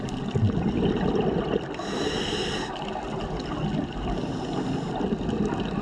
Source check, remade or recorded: recorded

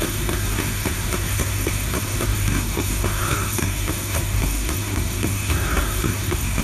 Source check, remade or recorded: remade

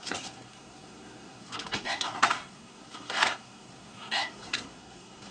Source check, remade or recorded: remade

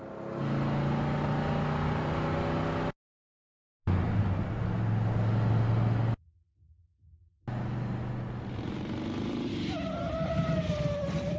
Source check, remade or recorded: recorded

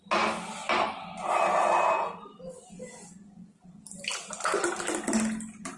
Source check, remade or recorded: recorded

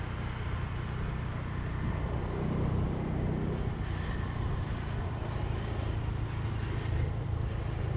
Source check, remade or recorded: recorded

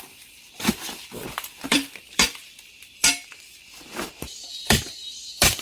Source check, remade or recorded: remade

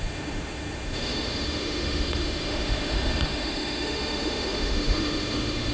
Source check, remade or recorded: remade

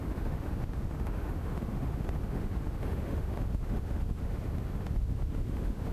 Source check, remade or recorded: remade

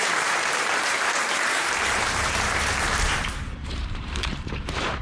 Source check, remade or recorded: remade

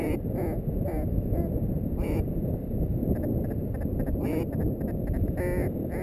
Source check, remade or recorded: recorded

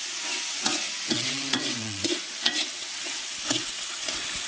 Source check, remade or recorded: remade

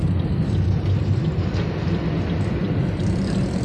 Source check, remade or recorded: remade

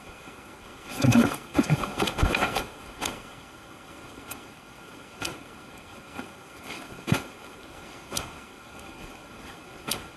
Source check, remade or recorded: remade